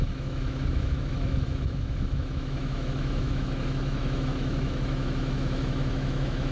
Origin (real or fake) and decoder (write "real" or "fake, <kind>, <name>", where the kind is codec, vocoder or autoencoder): fake, autoencoder, DAC-VAE